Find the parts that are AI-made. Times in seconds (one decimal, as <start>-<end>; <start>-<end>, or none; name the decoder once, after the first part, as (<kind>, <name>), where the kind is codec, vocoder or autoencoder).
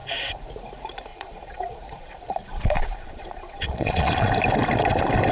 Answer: 1.1-4.3 (vocoder, Vocos)